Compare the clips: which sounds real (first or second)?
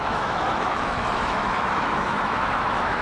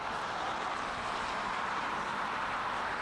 second